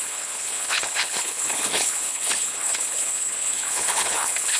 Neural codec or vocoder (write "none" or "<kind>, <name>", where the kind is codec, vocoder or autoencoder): codec, HILCodec